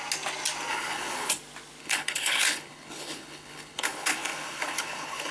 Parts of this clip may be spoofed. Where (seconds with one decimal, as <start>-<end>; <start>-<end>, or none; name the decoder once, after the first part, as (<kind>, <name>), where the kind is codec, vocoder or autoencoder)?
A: 0.7-1.3 (codec, HILCodec); 1.8-5.3